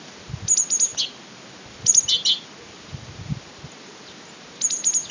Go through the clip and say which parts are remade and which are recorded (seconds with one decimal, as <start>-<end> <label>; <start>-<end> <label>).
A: 0.0-5.1 recorded